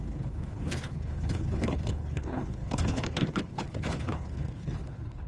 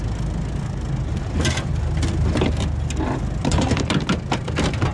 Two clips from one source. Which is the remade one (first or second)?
first